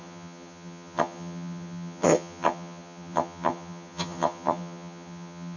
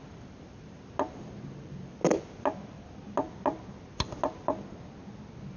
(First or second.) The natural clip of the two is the second